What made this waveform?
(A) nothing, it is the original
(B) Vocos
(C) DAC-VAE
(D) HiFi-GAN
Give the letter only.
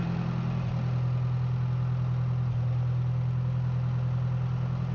A